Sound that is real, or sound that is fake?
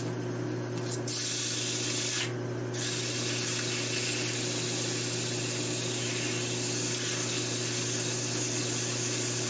real